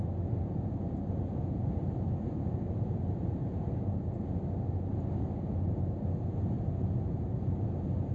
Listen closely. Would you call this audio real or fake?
real